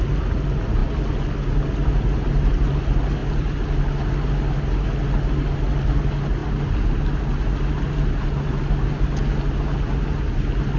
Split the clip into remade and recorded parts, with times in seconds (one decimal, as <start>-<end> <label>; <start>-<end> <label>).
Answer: 0.0-10.8 recorded